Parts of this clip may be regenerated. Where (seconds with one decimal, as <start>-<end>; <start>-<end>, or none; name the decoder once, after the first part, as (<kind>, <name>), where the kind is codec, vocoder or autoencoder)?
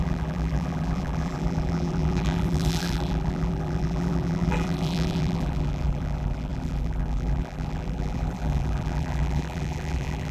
0.0-10.3 (vocoder, BigVGAN v2)